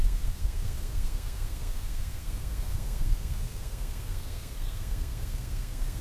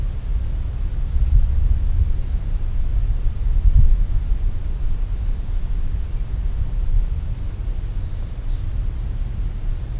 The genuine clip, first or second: second